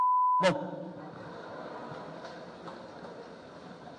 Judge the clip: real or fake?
real